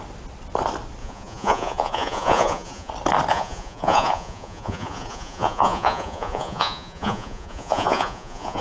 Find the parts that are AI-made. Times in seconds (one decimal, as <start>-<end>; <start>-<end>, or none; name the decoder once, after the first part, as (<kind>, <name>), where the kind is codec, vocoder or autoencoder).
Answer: 1.0-2.9 (vocoder, Vocos); 3.3-8.6